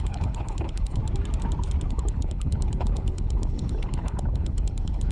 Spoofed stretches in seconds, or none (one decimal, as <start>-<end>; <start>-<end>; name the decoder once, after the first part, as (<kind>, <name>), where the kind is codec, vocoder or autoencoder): 0.0-1.0 (codec, HILCodec); 1.9-5.1